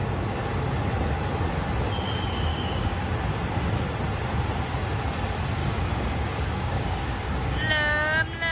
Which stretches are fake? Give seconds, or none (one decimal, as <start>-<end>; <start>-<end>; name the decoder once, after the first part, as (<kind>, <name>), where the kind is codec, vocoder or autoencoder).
2.5-3.0 (codec, DAC); 5.6-7.3